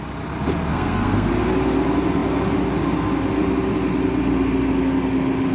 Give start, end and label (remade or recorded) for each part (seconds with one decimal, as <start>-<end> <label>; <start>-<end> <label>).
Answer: 0.0-0.7 recorded; 0.7-1.3 remade; 1.3-5.5 recorded